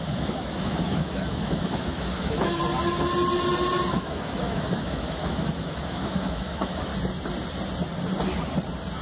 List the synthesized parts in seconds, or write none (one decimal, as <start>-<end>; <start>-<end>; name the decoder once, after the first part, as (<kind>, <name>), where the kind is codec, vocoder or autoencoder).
0.0-2.6 (autoencoder, DAC-VAE); 3.9-6.9